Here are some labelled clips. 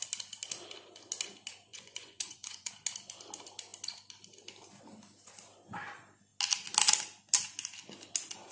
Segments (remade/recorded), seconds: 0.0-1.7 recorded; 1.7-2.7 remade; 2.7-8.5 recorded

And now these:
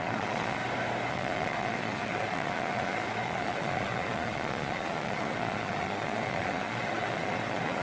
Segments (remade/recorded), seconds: 0.0-0.6 remade; 0.6-1.1 recorded; 1.1-7.8 remade

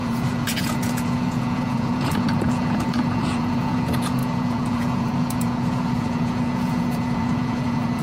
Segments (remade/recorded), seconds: 0.0-8.0 remade

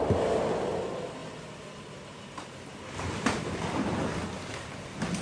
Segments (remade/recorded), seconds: 0.0-5.2 recorded

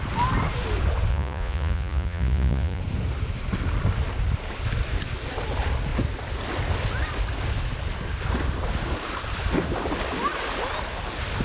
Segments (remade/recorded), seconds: 0.0-1.1 recorded; 1.1-2.8 remade; 2.8-11.4 recorded